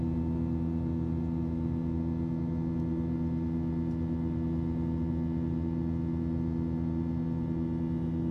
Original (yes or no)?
yes